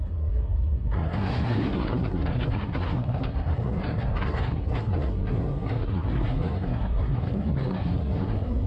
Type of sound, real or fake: fake